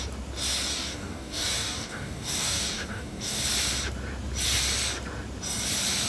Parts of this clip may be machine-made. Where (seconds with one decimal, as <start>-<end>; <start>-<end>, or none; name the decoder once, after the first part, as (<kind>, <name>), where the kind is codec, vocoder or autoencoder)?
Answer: 0.7-3.4 (codec, DAC)